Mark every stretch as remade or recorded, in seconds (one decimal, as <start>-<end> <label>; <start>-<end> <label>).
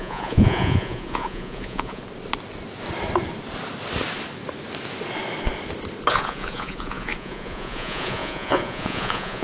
0.0-2.0 remade; 2.0-6.1 recorded; 6.1-9.4 remade